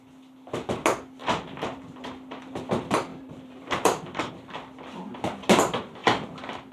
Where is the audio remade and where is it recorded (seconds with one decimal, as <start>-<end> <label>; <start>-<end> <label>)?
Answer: 0.0-1.2 recorded; 1.2-2.7 remade; 2.7-3.1 recorded; 3.1-4.3 remade; 4.3-6.0 recorded; 6.0-6.7 remade